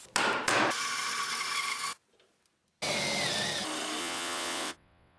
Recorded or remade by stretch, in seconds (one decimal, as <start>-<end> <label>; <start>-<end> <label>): 0.0-4.0 recorded; 4.0-5.2 remade